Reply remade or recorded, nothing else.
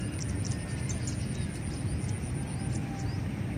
recorded